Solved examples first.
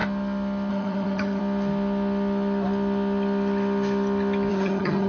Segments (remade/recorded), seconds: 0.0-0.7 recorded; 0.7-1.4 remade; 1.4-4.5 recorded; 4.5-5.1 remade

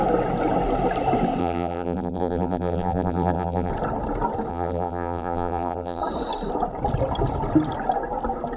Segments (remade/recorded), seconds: 0.0-1.4 recorded; 1.4-3.7 remade; 3.7-4.5 recorded; 4.5-6.0 remade; 6.0-8.6 recorded